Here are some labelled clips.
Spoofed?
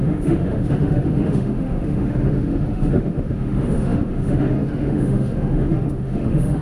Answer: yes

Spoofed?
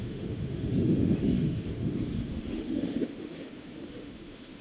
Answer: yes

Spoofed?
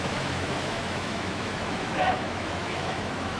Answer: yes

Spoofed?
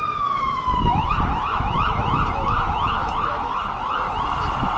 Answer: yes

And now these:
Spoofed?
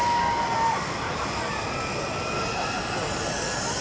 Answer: no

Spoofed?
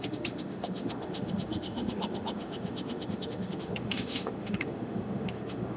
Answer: yes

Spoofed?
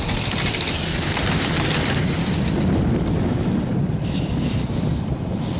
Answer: no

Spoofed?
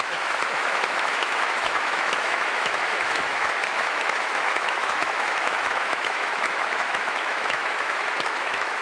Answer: yes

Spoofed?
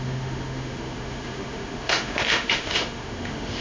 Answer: yes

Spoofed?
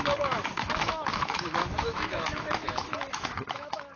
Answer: yes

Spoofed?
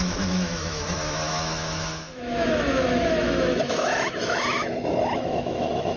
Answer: yes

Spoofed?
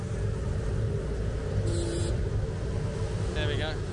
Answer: no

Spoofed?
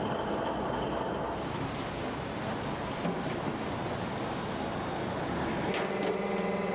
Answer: no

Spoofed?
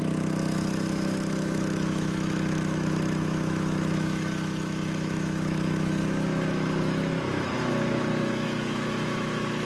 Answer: yes